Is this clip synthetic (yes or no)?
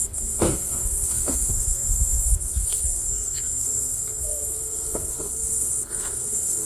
yes